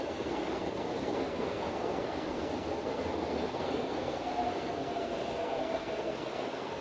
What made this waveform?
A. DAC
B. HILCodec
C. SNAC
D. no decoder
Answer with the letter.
C